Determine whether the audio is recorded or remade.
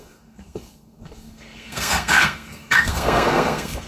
remade